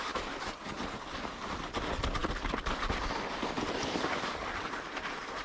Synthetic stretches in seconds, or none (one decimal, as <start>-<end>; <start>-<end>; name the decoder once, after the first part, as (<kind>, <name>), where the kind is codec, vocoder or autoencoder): none

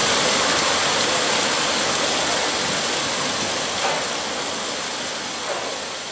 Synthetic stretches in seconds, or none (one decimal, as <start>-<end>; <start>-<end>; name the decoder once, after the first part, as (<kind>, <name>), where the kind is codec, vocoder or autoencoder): none

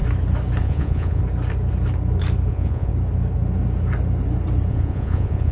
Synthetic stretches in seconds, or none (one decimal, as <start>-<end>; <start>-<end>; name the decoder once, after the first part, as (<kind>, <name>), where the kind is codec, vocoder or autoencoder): 0.6-1.2 (vocoder, Vocos); 2.5-2.9; 4.7-5.5

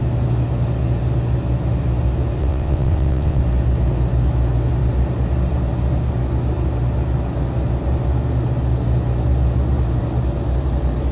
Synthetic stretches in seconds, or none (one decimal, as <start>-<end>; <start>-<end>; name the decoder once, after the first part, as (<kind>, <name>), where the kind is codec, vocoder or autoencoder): 2.4-3.4 (vocoder, WaveNeXt)

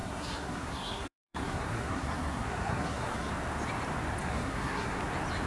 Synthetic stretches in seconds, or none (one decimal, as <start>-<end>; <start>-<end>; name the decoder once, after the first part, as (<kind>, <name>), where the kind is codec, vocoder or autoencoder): 0.0-3.3 (codec, SNAC); 4.2-5.0

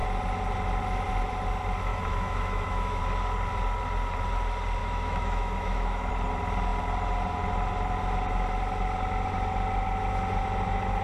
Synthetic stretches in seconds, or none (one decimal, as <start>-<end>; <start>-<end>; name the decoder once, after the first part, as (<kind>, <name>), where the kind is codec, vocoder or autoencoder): 1.9-3.0 (autoencoder, DAC-VAE); 4.8-6.1

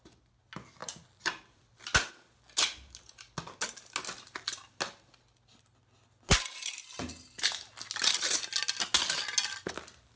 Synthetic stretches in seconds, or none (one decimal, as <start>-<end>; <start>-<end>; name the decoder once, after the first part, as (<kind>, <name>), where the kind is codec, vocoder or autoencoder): 0.8-2.1 (vocoder, BigVGAN v2)